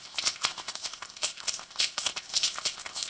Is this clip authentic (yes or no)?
no